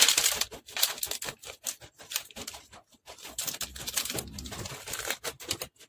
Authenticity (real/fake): real